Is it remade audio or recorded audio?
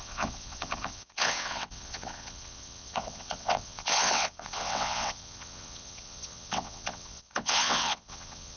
remade